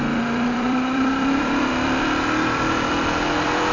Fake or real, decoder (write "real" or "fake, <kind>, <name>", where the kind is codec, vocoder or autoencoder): fake, vocoder, BigVGAN v2